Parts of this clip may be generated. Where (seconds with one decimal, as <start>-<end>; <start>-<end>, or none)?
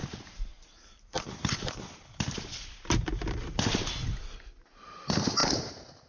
0.0-3.7